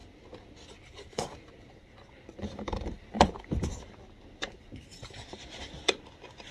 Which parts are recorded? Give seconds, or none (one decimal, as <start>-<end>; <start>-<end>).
3.4-6.5